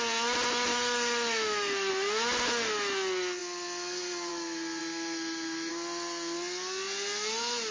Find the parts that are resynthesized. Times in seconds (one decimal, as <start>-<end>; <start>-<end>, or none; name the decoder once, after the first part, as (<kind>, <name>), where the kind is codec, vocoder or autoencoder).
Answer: 0.7-1.9 (autoencoder, DAC-VAE); 4.8-5.7